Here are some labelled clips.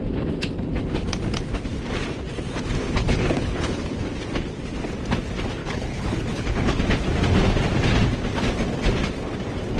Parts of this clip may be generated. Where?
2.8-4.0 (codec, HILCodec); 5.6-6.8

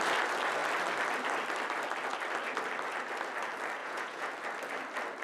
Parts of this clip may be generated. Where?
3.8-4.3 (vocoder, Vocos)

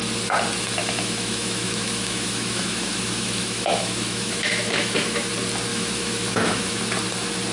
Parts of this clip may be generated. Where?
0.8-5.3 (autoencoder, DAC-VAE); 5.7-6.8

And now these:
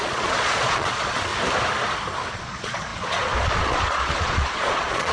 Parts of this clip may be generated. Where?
0.0-1.3 (vocoder, Vocos); 2.3-5.1

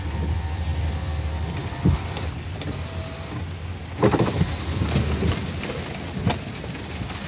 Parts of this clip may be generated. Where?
none